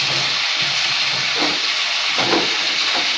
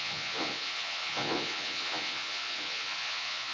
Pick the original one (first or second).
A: first